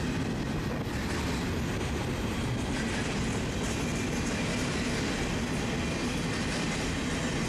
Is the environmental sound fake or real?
real